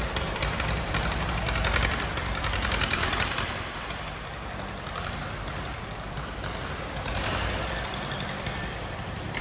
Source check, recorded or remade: remade